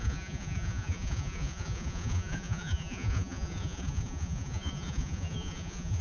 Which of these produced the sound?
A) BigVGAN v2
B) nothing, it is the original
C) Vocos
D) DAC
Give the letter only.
C